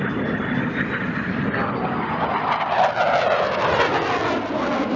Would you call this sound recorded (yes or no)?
yes